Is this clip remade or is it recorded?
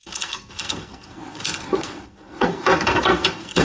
remade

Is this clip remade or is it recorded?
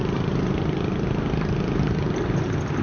recorded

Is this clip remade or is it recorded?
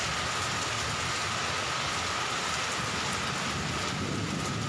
recorded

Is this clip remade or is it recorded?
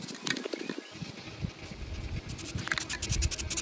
recorded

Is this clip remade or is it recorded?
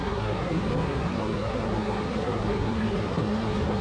remade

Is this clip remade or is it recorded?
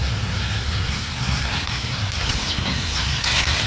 remade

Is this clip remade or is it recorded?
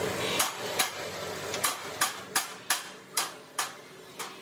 recorded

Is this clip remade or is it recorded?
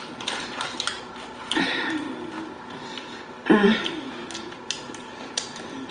recorded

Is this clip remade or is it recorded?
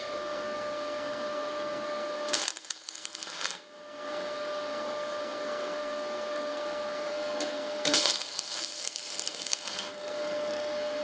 remade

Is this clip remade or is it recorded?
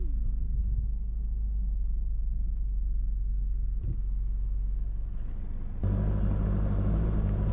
recorded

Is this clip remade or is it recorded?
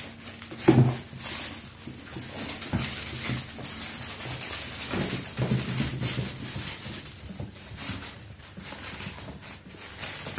recorded